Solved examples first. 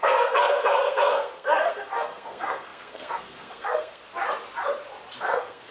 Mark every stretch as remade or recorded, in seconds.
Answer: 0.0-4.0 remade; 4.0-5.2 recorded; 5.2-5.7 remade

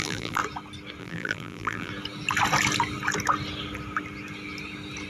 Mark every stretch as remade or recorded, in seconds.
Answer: 0.0-0.4 remade; 0.4-1.0 recorded; 1.0-1.9 remade; 1.9-5.1 recorded

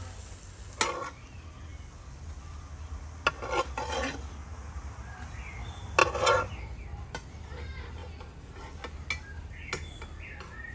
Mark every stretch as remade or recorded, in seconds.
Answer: 0.0-10.7 recorded

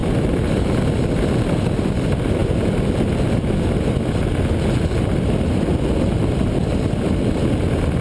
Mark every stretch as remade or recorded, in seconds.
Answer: 0.0-8.0 recorded